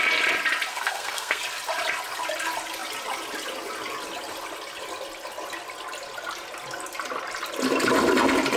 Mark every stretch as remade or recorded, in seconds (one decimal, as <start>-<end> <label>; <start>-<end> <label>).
0.0-0.7 recorded; 0.7-1.4 remade; 1.4-8.6 recorded